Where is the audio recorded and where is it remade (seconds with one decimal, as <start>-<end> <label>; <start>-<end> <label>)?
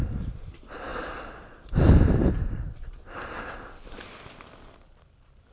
0.0-5.5 recorded